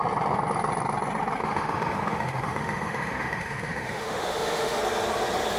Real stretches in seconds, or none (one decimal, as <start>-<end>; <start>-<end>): 0.0-1.4; 4.8-5.6